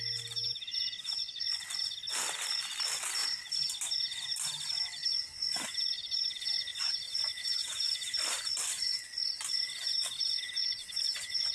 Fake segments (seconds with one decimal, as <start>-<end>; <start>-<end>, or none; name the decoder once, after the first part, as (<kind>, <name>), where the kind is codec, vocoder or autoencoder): none